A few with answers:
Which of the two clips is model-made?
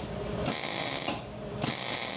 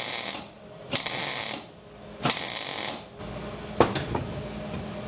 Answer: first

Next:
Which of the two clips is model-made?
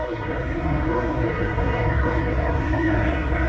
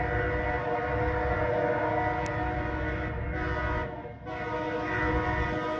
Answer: first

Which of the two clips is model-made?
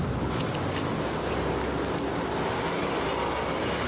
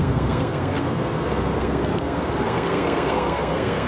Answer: second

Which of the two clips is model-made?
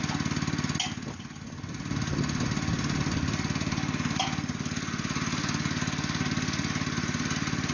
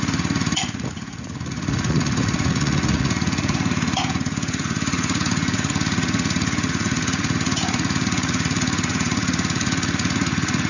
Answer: second